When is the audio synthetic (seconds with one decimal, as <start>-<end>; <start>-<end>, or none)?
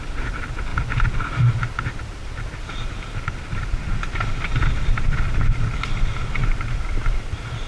0.7-1.6; 2.2-6.8